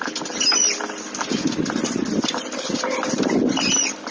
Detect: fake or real real